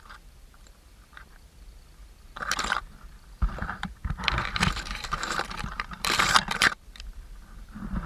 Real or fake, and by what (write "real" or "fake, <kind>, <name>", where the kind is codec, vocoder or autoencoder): fake, vocoder, BigVGAN v2